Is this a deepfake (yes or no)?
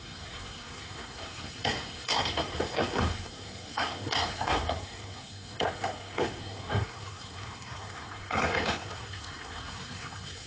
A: yes